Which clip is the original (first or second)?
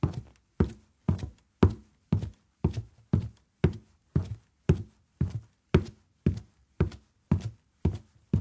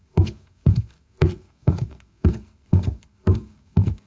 first